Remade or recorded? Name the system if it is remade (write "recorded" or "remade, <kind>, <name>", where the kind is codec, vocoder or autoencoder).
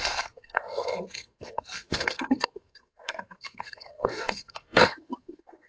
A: remade, codec, SNAC